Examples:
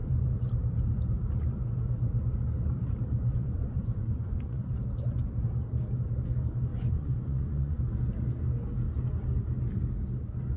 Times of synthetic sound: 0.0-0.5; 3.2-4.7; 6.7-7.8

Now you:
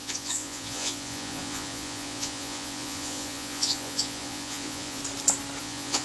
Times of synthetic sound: 0.0-5.0; 5.6-6.0

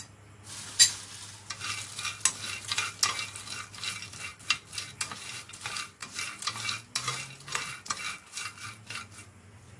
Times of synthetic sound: none

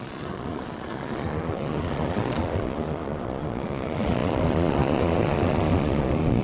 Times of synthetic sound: 0.0-6.4

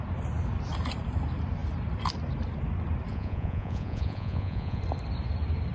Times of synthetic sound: 3.1-4.8

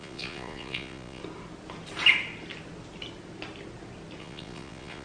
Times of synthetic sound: 0.0-1.2; 4.2-5.0

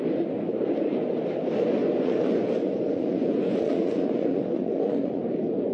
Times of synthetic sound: 1.8-5.2